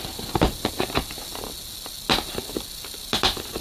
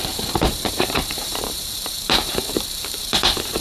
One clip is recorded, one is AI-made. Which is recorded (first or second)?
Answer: first